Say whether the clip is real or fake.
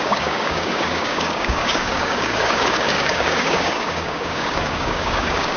fake